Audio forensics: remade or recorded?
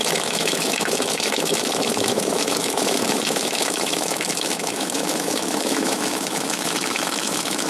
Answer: remade